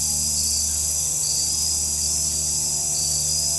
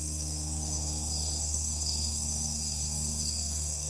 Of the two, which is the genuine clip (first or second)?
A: first